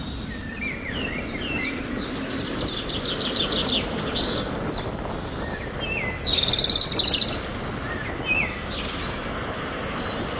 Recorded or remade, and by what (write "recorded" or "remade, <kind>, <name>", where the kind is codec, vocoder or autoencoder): recorded